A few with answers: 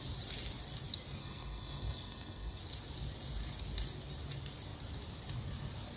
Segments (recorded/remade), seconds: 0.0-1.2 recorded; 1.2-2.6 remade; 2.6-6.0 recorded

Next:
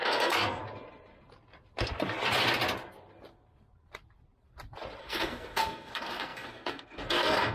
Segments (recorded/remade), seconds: 0.0-0.6 remade; 0.6-5.0 recorded; 5.0-7.5 remade